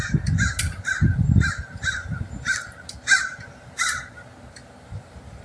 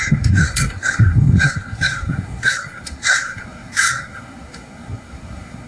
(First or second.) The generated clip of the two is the second